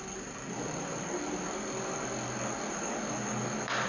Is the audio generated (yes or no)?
no